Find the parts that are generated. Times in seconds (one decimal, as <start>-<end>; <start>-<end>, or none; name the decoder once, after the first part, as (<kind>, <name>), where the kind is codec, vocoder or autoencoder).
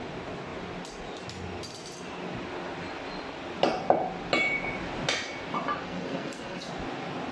5.8-6.7 (codec, SNAC)